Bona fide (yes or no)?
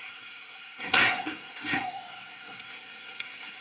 no